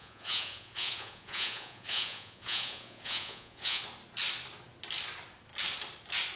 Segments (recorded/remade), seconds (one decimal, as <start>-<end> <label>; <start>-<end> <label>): 0.0-3.8 remade; 3.8-6.4 recorded

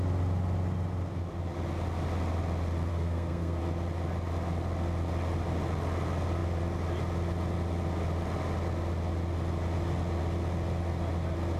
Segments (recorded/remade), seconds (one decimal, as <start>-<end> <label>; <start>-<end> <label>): 0.0-2.9 recorded; 2.9-3.6 remade; 3.6-11.6 recorded